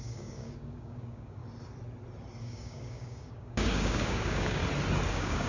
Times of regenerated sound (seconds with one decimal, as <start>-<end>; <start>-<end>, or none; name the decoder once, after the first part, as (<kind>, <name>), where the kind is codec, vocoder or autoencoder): 0.0-1.4 (codec, DAC); 2.4-4.6; 5.1-5.5